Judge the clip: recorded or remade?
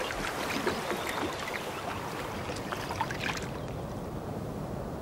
recorded